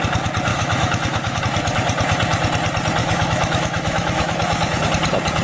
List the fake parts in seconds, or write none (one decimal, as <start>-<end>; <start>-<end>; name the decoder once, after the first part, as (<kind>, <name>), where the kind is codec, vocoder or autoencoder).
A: 0.5-1.4 (autoencoder, DAC-VAE); 3.0-4.9